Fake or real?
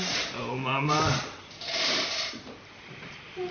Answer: fake